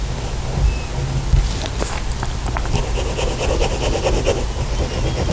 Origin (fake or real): real